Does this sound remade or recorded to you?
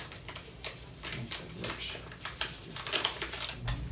recorded